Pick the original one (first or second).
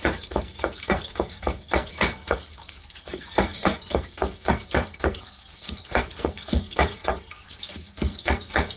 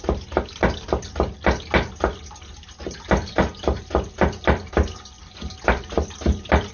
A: second